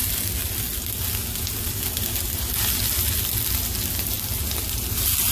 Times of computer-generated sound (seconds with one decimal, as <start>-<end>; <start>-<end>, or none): none